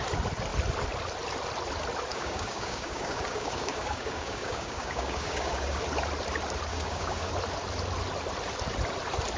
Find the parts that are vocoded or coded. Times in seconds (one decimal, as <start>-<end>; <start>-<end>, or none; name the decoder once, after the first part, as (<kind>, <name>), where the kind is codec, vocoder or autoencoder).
2.1-5.8 (codec, DAC); 6.7-7.3